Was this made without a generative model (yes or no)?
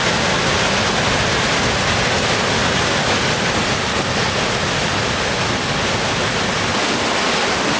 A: yes